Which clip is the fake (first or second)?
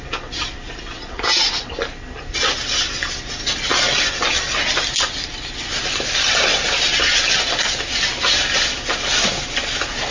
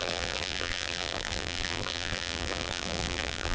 second